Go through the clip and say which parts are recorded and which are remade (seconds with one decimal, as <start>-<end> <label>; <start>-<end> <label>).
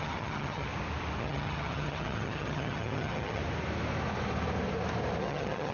0.0-0.7 remade; 0.7-1.2 recorded; 1.2-3.4 remade; 3.4-5.2 recorded; 5.2-5.7 remade